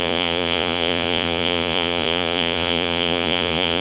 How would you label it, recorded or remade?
remade